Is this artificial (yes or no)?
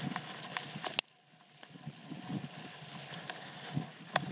no